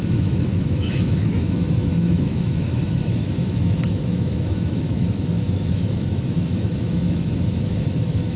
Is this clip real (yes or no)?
no